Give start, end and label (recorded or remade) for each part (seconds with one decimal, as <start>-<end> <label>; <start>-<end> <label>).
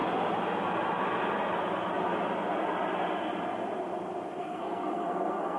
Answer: 0.0-4.4 recorded; 4.4-5.6 remade